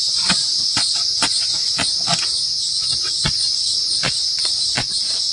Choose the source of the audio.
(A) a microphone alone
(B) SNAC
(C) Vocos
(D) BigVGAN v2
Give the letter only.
C